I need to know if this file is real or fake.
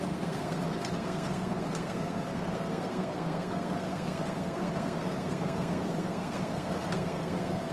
fake